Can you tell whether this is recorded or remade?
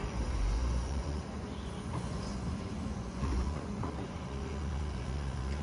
remade